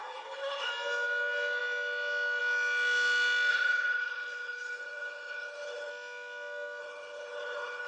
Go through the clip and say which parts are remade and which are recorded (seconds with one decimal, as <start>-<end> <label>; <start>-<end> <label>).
0.0-0.7 remade; 0.7-3.5 recorded; 3.5-5.9 remade; 5.9-6.8 recorded; 6.8-7.9 remade